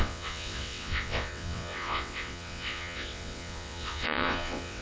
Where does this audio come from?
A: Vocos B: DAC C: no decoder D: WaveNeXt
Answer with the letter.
D